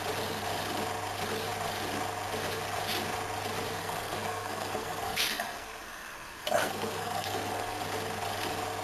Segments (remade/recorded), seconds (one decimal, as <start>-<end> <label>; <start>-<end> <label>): 0.0-3.8 recorded; 3.8-7.8 remade; 7.8-8.8 recorded